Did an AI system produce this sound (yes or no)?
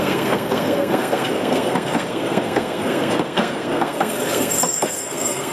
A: yes